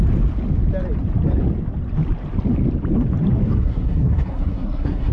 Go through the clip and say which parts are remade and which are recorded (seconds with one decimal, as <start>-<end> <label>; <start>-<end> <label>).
0.0-3.5 recorded; 3.5-5.1 remade